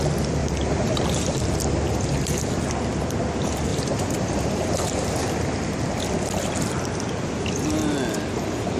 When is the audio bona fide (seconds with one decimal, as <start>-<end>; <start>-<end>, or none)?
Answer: 0.0-0.4; 1.4-3.7; 5.3-8.8